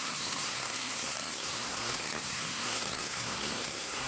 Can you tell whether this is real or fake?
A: fake